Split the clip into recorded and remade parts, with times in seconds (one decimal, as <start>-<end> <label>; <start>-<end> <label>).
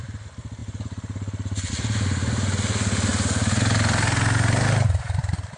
0.0-5.6 recorded